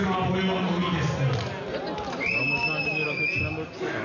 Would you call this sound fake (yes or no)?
no